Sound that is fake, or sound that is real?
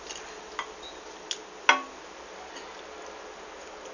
real